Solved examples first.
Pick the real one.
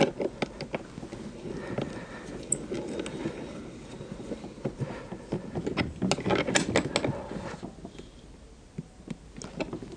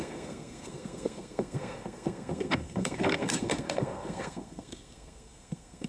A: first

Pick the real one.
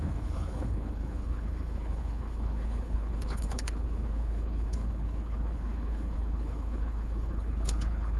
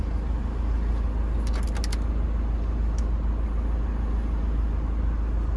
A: second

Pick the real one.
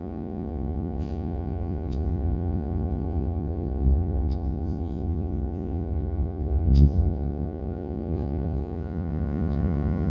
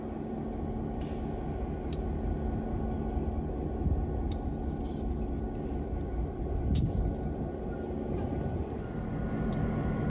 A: second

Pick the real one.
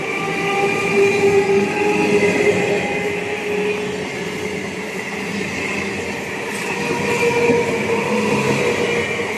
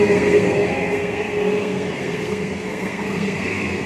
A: first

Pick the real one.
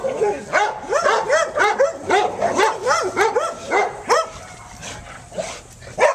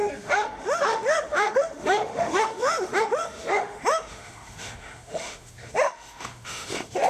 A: first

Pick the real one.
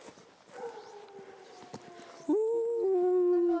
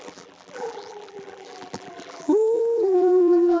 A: first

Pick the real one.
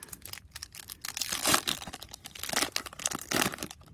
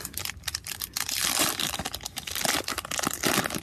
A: second